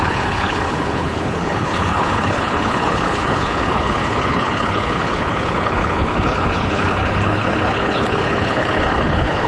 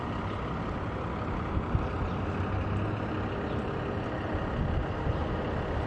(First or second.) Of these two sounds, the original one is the second